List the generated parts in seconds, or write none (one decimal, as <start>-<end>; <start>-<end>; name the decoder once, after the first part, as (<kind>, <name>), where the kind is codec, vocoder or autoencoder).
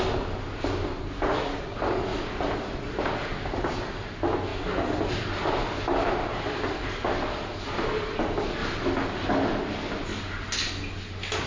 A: none